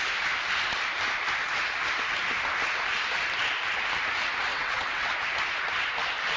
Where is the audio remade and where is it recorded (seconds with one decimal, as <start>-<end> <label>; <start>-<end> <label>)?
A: 0.0-4.5 recorded; 4.5-5.1 remade; 5.1-6.4 recorded